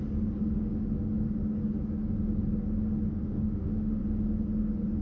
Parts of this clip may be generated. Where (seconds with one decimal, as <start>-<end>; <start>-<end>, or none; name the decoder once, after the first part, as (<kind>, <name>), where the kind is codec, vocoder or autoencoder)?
3.2-4.0 (autoencoder, DAC-VAE)